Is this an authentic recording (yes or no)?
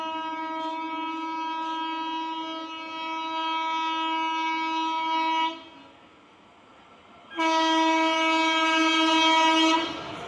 yes